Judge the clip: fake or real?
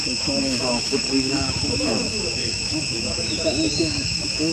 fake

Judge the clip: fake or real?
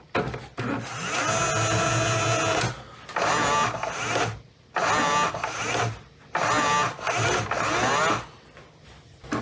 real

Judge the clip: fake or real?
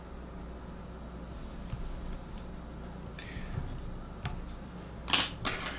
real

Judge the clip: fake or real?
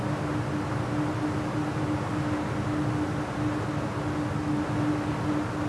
real